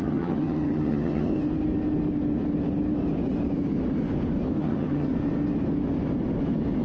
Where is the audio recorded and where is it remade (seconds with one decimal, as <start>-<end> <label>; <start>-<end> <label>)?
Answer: 0.0-1.3 remade; 1.3-4.6 recorded; 4.6-5.1 remade; 5.1-6.8 recorded